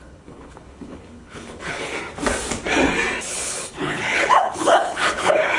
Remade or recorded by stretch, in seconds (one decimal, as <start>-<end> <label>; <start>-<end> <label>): 0.0-1.9 remade; 1.9-3.3 recorded; 3.3-5.6 remade